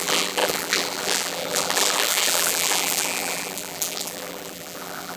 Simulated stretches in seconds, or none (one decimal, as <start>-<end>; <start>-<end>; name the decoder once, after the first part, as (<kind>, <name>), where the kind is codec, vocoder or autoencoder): 0.0-5.2 (vocoder, BigVGAN v2)